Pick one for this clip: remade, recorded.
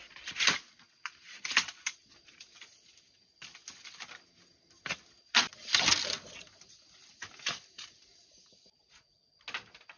recorded